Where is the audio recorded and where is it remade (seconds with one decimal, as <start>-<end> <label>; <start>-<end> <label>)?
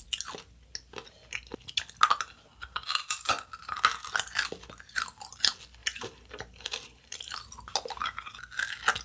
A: 0.0-5.8 recorded; 5.8-7.5 remade; 7.5-9.0 recorded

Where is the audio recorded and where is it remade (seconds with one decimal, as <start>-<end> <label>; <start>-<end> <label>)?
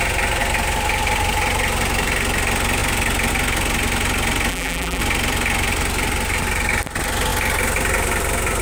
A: 0.0-4.5 recorded; 4.5-5.0 remade; 5.0-8.6 recorded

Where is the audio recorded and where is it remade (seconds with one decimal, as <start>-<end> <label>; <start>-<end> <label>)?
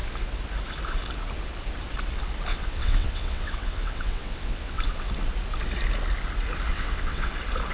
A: 0.0-2.5 recorded; 2.5-4.8 remade; 4.8-6.7 recorded; 6.7-7.3 remade; 7.3-7.7 recorded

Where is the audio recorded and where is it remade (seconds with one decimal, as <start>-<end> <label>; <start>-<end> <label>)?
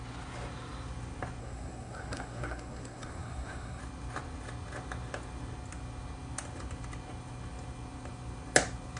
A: 0.0-1.4 recorded; 1.4-3.8 remade; 3.8-9.0 recorded